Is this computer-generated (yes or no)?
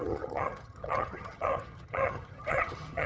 yes